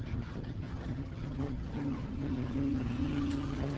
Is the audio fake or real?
fake